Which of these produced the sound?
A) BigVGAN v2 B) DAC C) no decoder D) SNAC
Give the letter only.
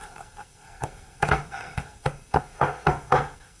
D